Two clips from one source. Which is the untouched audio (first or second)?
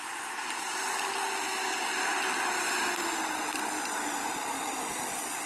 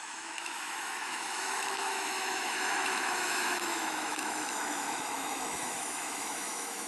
first